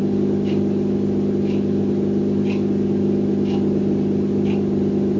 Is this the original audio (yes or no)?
yes